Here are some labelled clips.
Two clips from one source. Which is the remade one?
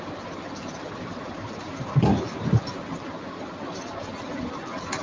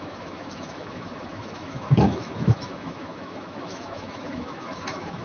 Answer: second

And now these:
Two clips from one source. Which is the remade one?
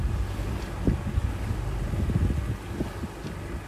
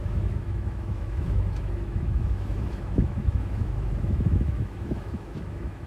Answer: second